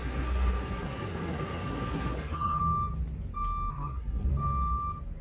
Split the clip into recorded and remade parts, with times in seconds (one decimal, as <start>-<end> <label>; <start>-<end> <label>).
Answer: 0.0-2.6 remade; 2.6-3.7 recorded; 3.7-4.3 remade; 4.3-5.2 recorded